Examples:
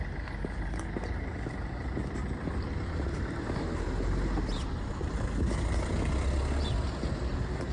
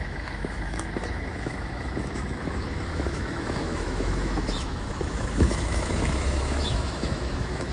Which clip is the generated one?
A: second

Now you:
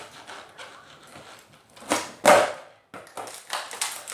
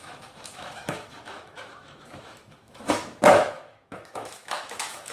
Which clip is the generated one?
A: second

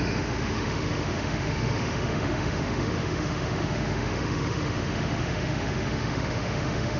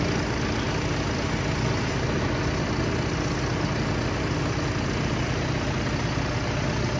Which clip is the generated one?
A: first